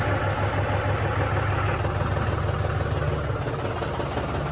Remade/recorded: recorded